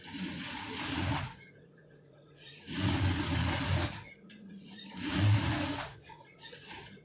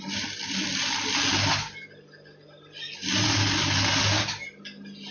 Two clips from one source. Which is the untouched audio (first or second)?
second